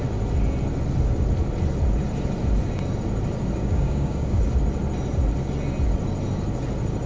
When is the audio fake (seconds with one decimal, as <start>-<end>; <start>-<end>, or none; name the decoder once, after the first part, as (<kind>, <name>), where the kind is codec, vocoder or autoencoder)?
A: 3.6-4.4 (codec, DAC)